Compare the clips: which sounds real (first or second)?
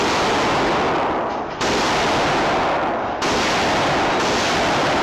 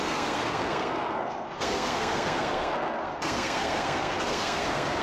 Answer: first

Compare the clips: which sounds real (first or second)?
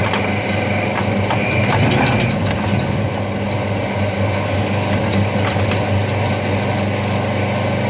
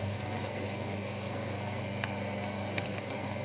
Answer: first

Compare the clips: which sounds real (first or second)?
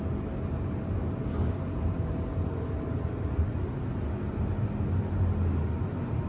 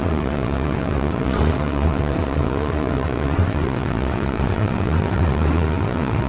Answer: first